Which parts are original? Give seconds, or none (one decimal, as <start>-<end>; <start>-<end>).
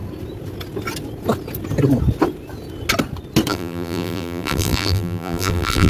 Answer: 0.0-3.5